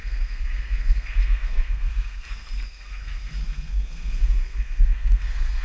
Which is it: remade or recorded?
remade